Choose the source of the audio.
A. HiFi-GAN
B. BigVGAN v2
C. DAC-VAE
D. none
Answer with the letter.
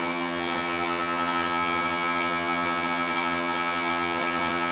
A